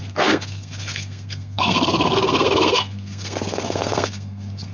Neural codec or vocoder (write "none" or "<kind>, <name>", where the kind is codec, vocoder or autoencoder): codec, SNAC